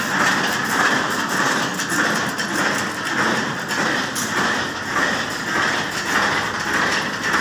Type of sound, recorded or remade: recorded